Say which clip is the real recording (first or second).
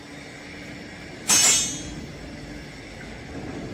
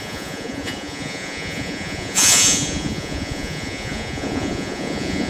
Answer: first